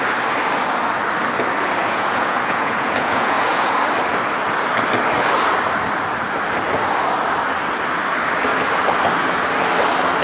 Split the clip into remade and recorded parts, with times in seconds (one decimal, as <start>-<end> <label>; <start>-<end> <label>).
0.0-1.8 recorded; 1.8-3.8 remade; 3.8-10.2 recorded